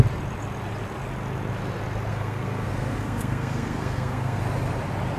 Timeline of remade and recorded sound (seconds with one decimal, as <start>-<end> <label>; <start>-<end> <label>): 0.0-2.1 recorded; 2.1-4.4 remade; 4.4-5.2 recorded